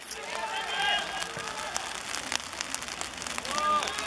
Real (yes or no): yes